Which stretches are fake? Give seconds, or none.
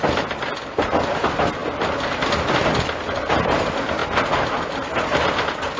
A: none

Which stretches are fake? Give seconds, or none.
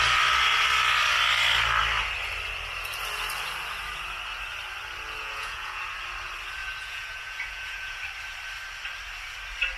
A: 5.2-5.8 (vocoder, Vocos); 6.6-8.0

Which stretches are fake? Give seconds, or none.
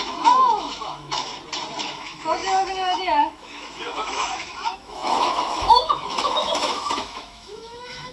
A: 0.0-1.3 (autoencoder, DAC-VAE); 1.9-8.1